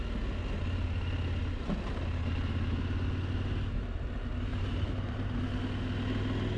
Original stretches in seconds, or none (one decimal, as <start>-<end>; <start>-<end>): 0.0-4.5; 5.4-6.6